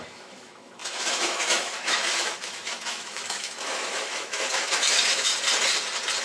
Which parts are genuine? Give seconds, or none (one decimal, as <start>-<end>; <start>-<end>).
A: 5.3-6.2